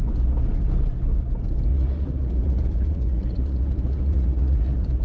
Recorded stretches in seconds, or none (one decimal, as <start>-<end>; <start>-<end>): 0.0-1.7